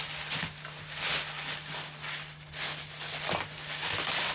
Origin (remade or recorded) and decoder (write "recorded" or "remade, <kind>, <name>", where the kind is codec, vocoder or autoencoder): recorded